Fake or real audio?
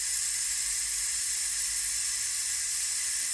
real